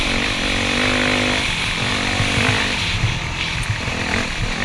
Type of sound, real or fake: real